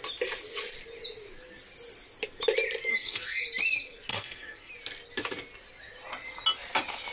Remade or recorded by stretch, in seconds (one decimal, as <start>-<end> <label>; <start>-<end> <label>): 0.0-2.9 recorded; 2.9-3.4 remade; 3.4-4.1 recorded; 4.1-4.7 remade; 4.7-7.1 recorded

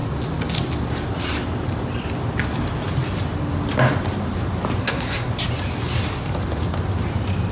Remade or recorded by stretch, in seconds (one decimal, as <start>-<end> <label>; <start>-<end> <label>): 0.0-4.8 recorded; 4.8-5.3 remade; 5.3-7.5 recorded

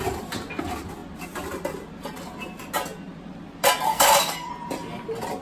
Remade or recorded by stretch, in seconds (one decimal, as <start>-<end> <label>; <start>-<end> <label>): 0.0-3.9 recorded; 3.9-4.5 remade; 4.5-5.4 recorded

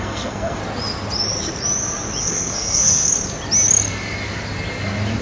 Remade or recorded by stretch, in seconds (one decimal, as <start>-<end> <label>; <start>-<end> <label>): 0.0-0.6 remade; 0.6-2.2 recorded; 2.2-3.1 remade; 3.1-5.2 recorded